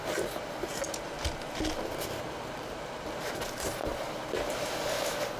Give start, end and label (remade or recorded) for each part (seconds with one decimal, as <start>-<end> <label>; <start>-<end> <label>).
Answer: 0.0-2.3 recorded; 2.3-3.8 remade; 3.8-5.4 recorded